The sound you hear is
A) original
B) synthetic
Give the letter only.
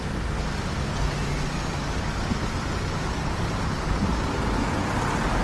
A